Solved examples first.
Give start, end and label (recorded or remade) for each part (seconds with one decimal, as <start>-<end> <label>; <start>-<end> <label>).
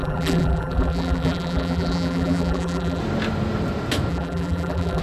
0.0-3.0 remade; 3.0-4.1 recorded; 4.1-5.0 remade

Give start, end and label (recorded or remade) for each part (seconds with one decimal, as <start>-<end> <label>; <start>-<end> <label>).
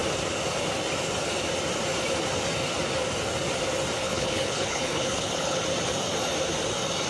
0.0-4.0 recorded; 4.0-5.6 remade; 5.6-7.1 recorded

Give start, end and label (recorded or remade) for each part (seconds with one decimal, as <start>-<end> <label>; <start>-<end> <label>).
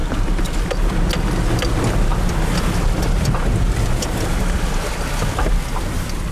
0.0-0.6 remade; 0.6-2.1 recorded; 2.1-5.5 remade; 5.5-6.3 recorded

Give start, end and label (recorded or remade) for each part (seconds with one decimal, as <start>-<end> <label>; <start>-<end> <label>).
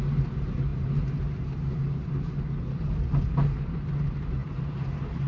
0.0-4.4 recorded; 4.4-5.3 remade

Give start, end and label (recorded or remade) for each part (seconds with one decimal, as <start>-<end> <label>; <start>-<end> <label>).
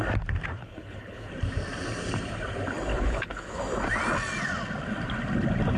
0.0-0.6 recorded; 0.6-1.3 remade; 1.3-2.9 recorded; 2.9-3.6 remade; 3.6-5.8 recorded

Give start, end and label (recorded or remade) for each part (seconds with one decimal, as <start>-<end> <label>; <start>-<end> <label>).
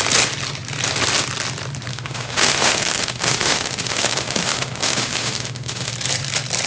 0.0-1.9 recorded; 1.9-5.9 remade; 5.9-6.7 recorded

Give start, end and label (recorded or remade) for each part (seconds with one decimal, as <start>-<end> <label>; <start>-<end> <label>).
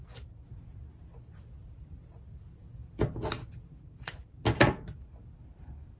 0.0-6.0 recorded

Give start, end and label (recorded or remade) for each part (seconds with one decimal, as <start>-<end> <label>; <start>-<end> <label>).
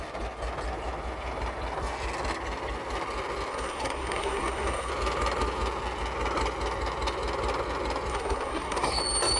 0.0-3.5 recorded; 3.5-4.9 remade; 4.9-8.1 recorded; 8.1-9.0 remade; 9.0-9.4 recorded